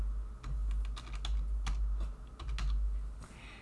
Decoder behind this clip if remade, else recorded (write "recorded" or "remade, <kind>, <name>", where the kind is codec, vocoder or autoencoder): recorded